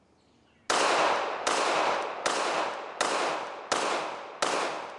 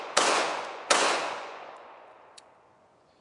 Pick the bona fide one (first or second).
first